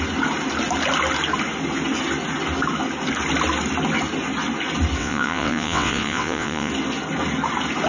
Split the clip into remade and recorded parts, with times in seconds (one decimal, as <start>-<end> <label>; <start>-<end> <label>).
0.0-5.0 recorded; 5.0-6.7 remade; 6.7-7.9 recorded